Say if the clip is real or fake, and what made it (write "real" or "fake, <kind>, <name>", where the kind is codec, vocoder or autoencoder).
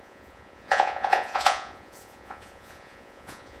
fake, vocoder, Vocos